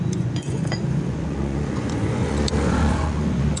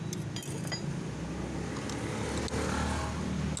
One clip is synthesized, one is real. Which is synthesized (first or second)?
first